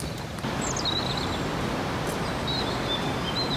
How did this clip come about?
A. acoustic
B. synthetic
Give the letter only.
A